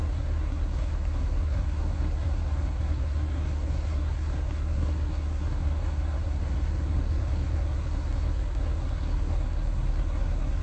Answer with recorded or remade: remade